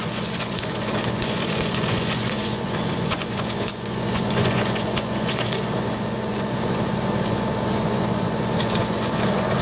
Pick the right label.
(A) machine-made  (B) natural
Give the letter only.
A